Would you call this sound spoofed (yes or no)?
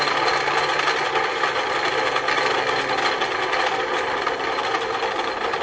no